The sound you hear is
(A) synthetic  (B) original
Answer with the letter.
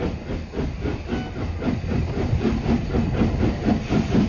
B